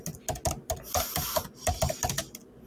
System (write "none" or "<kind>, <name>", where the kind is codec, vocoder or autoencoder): none